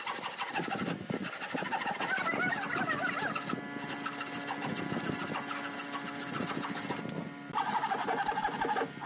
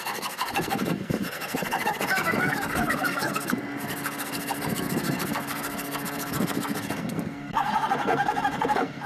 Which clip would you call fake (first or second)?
second